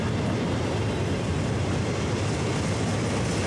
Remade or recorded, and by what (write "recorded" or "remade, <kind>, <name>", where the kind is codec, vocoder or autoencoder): recorded